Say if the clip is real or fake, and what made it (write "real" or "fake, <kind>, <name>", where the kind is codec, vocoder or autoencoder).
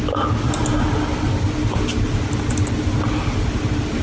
real